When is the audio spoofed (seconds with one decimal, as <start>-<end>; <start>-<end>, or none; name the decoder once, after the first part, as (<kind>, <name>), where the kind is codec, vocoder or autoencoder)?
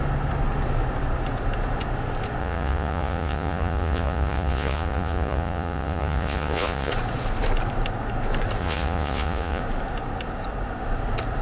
2.4-6.9 (vocoder, Vocos); 8.6-9.6